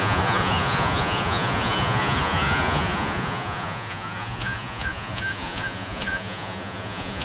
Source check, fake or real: fake